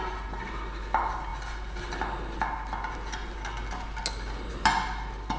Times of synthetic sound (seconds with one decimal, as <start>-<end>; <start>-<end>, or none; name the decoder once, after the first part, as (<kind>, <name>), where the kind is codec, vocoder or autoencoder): none